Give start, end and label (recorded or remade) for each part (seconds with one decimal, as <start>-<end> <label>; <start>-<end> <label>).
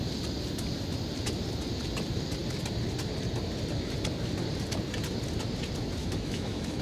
0.0-6.0 recorded; 6.0-6.8 remade